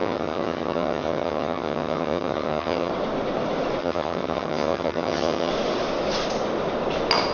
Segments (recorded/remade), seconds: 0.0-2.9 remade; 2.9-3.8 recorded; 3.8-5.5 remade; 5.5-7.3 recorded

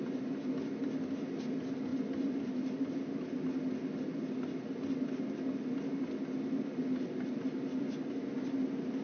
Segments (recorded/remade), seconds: 0.0-9.0 recorded

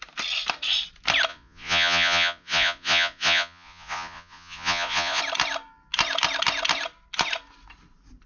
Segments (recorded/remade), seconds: 0.0-1.3 recorded; 1.3-5.2 remade; 5.2-8.3 recorded